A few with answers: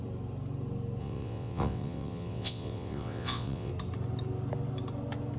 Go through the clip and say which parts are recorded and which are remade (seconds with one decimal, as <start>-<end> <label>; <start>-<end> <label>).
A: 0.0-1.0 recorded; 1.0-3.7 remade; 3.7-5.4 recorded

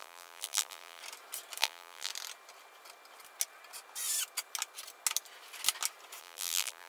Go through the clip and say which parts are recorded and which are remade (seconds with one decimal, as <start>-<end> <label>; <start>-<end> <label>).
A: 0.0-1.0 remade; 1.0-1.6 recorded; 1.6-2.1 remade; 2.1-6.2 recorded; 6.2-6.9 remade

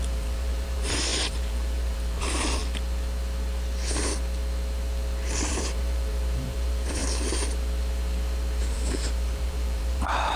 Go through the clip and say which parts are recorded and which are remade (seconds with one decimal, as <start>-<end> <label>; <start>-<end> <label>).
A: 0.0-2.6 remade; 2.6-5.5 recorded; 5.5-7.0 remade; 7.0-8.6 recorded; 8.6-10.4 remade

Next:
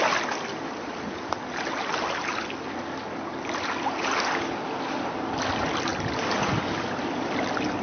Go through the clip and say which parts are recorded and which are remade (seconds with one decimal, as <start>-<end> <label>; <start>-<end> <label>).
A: 0.0-7.8 recorded

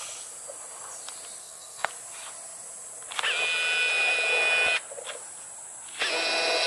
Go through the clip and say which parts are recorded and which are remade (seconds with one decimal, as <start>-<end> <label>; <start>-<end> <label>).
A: 0.0-1.4 recorded; 1.4-1.9 remade; 1.9-6.7 recorded

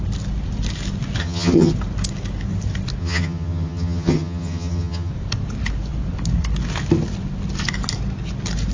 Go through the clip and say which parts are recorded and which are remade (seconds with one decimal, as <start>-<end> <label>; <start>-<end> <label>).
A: 0.0-1.2 recorded; 1.2-1.7 remade; 1.7-3.0 recorded; 3.0-5.1 remade; 5.1-8.7 recorded